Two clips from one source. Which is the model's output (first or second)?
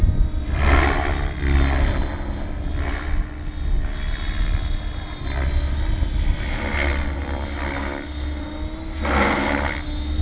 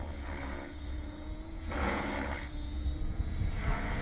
second